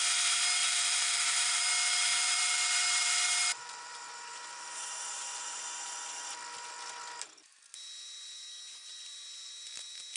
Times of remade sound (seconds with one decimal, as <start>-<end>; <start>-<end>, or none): 0.6-1.7; 2.1-5.6